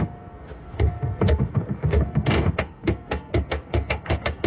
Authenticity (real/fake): fake